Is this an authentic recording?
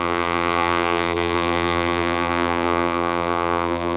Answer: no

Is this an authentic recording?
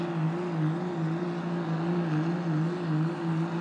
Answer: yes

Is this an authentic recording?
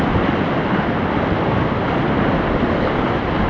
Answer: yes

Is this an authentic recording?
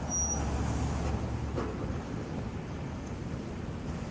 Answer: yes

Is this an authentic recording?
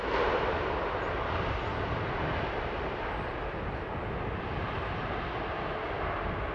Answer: yes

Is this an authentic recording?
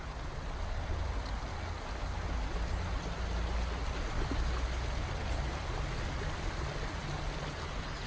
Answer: yes